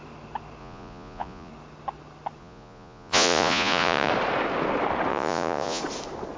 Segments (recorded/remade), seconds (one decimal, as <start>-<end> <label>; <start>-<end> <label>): 0.0-0.6 recorded; 0.6-1.5 remade; 1.5-2.4 recorded; 2.4-4.1 remade; 4.1-5.1 recorded; 5.1-5.8 remade; 5.8-6.4 recorded